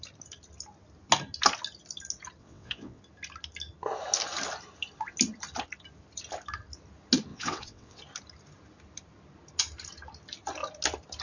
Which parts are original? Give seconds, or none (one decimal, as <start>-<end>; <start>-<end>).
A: 0.0-2.4; 3.0-7.3; 8.0-11.2